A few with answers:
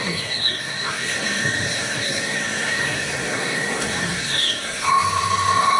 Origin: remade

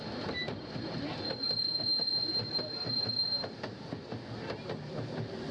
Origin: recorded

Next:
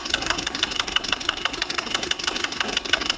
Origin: remade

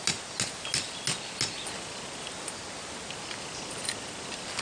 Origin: recorded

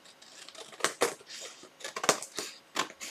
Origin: recorded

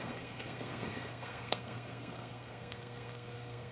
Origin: remade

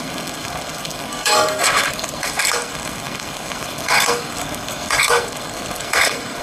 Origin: remade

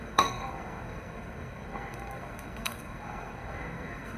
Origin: remade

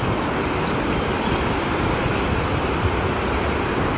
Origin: recorded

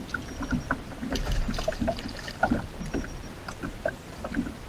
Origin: recorded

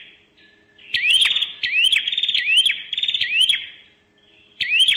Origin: recorded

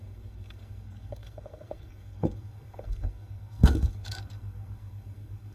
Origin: remade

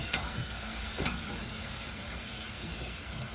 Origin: remade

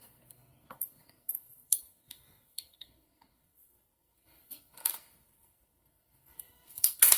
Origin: remade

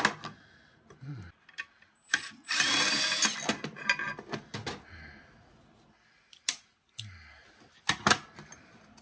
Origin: recorded